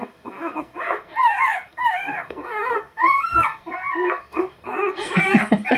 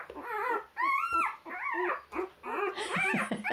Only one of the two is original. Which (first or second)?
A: second